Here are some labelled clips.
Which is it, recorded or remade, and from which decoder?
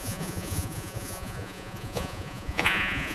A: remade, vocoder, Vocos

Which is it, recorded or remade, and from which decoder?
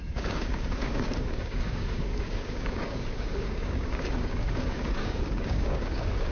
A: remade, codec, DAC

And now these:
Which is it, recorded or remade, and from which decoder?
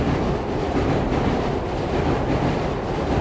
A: recorded